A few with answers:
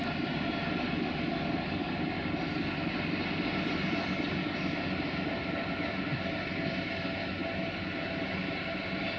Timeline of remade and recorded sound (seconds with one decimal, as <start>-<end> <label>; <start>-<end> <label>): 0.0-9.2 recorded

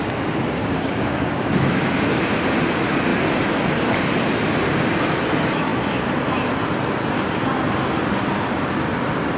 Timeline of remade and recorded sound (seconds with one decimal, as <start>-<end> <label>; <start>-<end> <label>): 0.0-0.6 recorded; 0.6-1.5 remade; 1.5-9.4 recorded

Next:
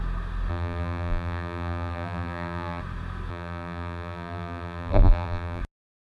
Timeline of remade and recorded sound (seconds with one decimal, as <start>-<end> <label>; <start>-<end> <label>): 0.0-0.5 recorded; 0.5-2.8 remade; 2.8-3.3 recorded; 3.3-5.6 remade; 5.6-6.0 recorded